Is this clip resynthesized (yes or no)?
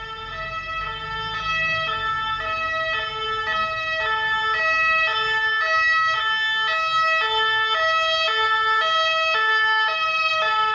no